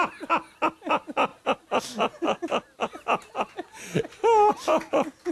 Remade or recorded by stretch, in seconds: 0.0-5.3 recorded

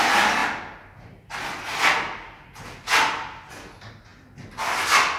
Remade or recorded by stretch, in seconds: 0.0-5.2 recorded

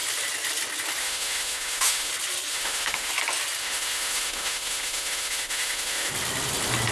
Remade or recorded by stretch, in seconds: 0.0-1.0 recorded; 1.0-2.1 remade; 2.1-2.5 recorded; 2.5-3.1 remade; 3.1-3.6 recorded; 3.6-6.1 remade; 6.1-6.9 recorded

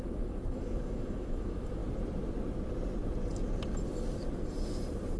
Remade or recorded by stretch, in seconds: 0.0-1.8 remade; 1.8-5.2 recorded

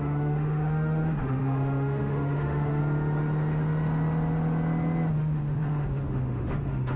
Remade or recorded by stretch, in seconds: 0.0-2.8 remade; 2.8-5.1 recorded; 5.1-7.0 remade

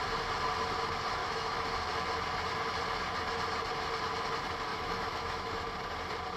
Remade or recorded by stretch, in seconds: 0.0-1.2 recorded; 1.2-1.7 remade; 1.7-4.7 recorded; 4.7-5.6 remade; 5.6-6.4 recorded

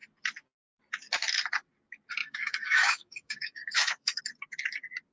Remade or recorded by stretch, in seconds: 0.0-2.2 recorded; 2.2-4.2 remade; 4.2-5.1 recorded